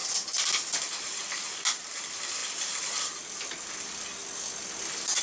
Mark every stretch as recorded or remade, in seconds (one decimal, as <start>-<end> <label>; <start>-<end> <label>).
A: 0.0-2.0 remade; 2.0-2.4 recorded; 2.4-3.7 remade; 3.7-5.2 recorded